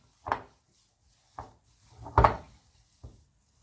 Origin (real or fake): real